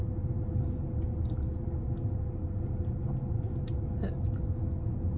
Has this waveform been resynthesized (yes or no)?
no